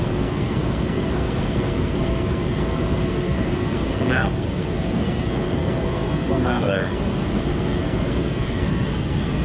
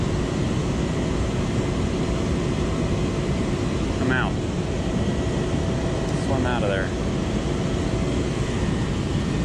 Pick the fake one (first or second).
first